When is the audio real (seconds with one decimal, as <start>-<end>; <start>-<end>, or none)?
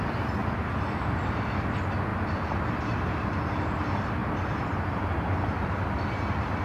0.0-6.6